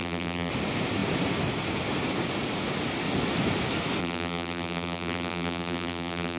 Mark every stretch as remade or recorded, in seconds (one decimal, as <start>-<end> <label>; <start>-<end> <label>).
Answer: 0.0-0.5 remade; 0.5-4.0 recorded; 4.0-6.4 remade